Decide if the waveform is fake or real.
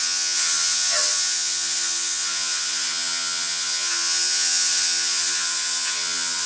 fake